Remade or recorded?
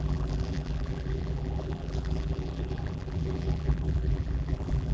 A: remade